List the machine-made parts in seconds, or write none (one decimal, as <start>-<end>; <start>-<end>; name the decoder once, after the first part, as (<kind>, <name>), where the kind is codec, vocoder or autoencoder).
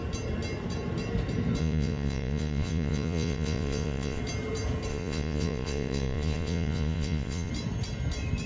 1.6-4.2 (vocoder, Vocos); 4.9-7.5